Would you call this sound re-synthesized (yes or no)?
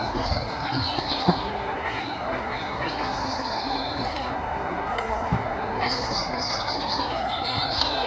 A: yes